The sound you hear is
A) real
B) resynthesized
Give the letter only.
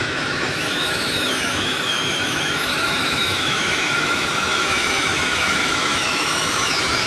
B